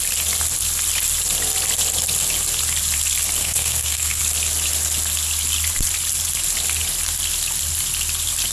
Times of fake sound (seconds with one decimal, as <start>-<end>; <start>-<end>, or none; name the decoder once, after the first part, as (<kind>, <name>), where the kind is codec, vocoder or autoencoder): 3.4-4.2 (codec, SNAC)